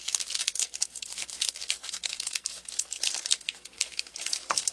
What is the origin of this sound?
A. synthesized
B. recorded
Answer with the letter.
A